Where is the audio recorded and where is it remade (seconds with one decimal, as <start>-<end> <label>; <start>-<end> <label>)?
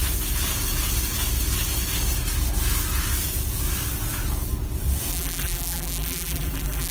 0.0-5.1 recorded; 5.1-6.9 remade